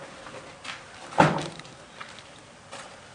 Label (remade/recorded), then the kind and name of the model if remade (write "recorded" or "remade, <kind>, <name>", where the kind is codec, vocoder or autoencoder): recorded